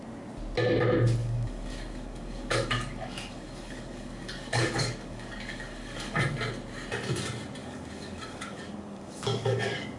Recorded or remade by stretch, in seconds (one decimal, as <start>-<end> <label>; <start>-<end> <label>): 0.0-1.2 recorded; 1.2-6.3 remade; 6.3-7.6 recorded; 7.6-10.0 remade